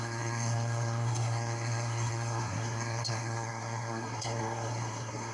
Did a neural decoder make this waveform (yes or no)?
yes